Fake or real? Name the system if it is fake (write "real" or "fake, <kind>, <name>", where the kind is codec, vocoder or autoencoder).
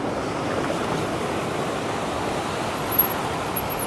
real